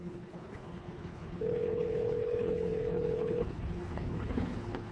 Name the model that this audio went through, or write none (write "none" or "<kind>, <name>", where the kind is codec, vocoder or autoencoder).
codec, HILCodec